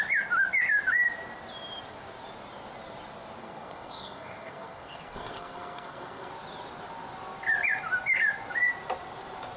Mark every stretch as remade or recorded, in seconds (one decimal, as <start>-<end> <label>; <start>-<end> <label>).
0.0-3.4 recorded; 3.4-6.3 remade; 6.3-9.6 recorded